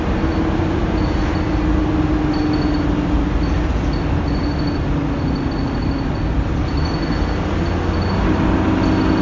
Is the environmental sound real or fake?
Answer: real